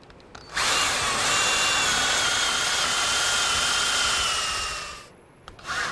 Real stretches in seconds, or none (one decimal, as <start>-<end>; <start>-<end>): 0.0-4.9